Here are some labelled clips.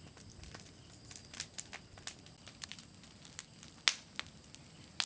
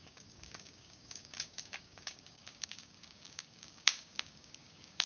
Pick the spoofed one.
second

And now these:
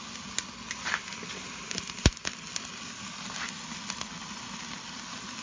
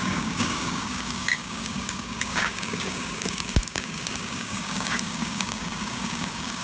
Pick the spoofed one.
second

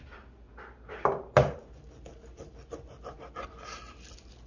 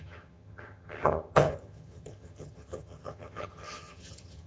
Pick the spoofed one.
second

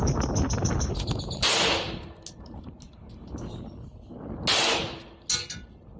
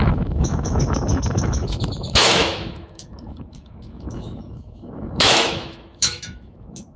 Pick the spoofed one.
second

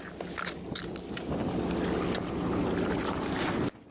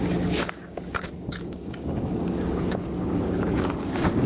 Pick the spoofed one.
second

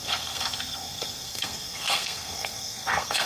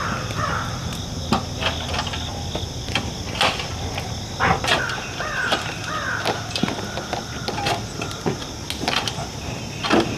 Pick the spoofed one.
first